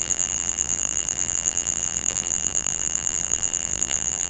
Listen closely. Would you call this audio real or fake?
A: fake